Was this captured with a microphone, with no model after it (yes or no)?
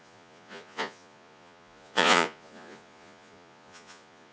no